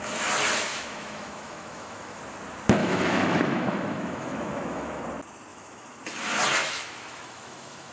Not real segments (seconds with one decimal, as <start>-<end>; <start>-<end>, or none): 0.7-2.2; 2.8-5.0; 5.5-6.0; 6.6-7.9